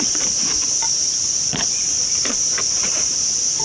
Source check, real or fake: fake